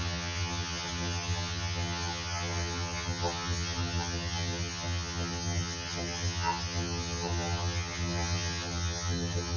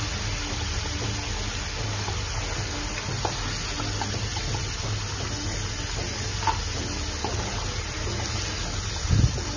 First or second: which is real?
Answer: second